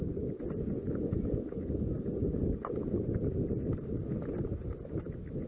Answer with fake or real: real